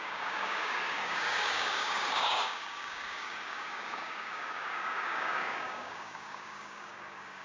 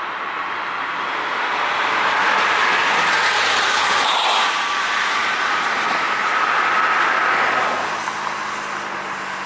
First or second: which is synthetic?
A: first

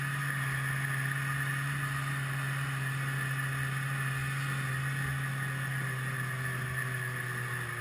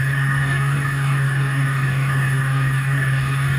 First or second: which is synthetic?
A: second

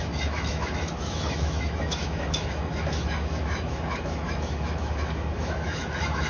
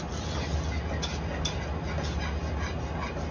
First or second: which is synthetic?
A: first